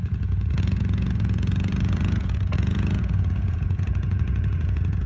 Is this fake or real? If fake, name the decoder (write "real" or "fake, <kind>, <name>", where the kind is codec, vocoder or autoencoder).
fake, vocoder, Vocos